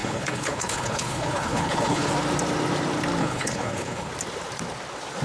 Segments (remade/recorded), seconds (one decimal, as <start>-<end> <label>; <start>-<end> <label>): 0.0-2.1 remade; 2.1-3.2 recorded; 3.2-4.1 remade; 4.1-5.2 recorded